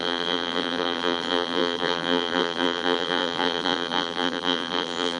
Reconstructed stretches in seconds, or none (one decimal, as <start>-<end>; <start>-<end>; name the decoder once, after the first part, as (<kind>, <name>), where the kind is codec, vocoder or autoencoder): 0.0-5.2 (vocoder, BigVGAN v2)